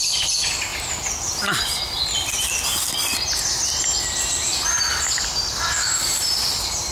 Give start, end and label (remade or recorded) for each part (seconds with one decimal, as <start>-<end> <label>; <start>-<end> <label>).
0.0-6.9 recorded